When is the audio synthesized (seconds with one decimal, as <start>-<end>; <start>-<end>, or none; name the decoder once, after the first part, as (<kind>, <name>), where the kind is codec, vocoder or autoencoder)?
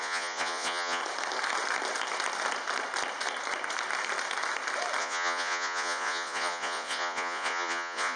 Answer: 0.0-1.0 (vocoder, Vocos); 5.0-8.2